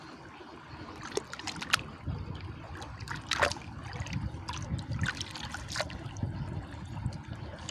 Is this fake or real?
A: real